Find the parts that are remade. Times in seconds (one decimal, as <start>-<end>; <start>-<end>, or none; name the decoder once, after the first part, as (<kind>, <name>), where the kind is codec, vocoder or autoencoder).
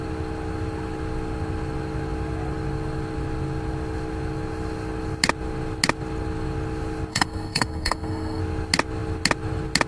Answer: 7.1-8.4 (codec, SNAC)